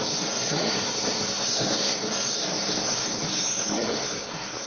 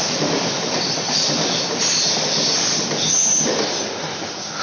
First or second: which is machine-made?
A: first